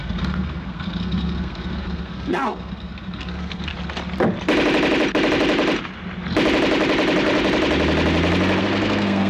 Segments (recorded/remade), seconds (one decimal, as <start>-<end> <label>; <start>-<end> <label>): 0.0-3.7 remade; 3.7-8.6 recorded; 8.6-9.3 remade